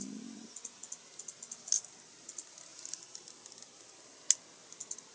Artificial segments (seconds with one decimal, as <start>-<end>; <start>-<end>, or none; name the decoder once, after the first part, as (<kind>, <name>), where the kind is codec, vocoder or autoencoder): 2.7-4.2 (vocoder, BigVGAN v2)